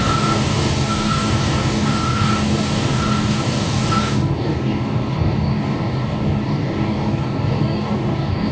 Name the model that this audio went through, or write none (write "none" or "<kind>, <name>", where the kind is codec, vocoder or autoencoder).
codec, DAC